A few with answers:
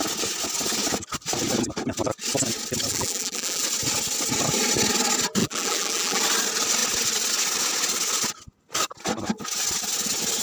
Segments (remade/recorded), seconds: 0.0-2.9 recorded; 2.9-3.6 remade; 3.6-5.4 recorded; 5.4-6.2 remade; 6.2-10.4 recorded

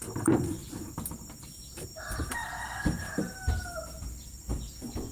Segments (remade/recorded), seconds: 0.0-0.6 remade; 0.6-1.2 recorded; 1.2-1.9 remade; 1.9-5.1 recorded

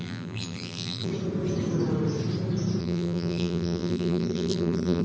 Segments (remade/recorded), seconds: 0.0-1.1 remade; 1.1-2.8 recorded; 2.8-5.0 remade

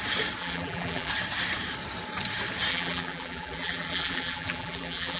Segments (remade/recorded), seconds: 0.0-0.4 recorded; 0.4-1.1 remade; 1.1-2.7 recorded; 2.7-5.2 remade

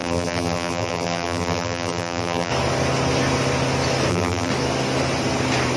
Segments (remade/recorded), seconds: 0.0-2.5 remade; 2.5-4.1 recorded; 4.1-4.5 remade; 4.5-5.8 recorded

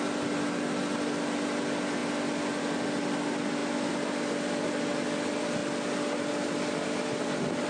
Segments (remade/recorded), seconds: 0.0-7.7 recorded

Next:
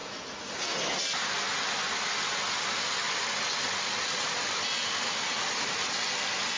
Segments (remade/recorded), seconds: 0.0-4.0 recorded; 4.0-6.6 remade